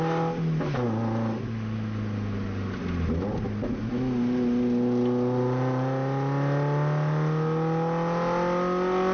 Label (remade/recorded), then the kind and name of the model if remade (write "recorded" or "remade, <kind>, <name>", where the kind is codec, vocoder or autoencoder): recorded